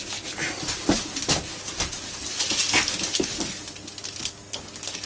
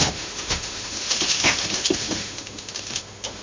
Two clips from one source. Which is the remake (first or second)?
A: second